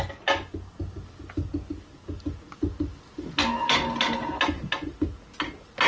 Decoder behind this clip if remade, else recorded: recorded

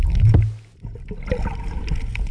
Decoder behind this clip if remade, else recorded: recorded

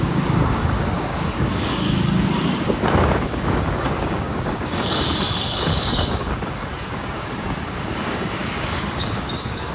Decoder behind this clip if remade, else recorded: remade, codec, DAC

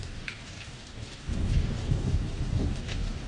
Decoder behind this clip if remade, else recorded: remade, codec, DAC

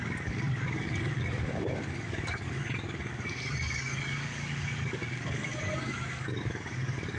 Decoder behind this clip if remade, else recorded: remade, codec, DAC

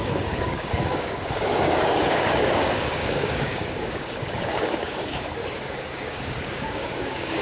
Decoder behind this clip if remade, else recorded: remade, codec, DAC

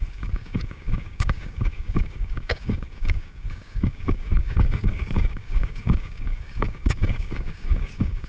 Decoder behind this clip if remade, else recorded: remade, codec, DAC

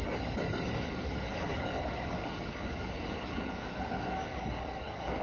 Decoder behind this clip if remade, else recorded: remade, codec, DAC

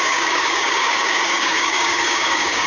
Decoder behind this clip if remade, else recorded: remade, codec, DAC